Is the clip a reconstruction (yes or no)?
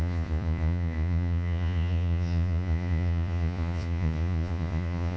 yes